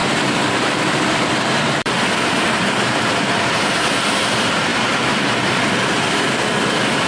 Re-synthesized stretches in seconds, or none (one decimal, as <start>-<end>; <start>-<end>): 0.0-4.7; 5.6-7.1